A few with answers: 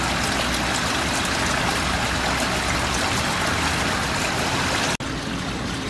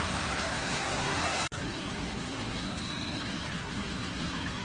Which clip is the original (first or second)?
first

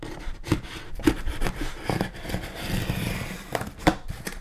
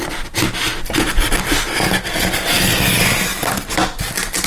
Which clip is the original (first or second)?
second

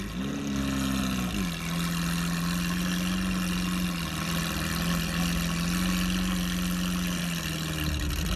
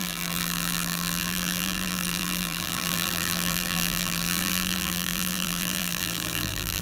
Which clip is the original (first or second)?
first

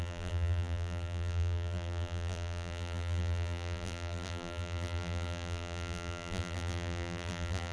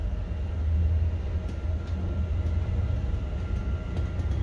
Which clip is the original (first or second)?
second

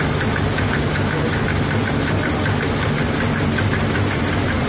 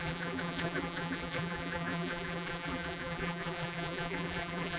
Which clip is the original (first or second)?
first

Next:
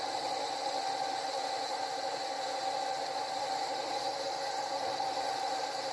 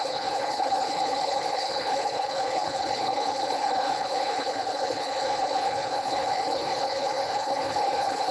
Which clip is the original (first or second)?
first